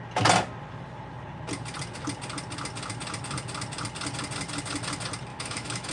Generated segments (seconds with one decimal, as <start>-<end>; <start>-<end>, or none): 5.3-5.9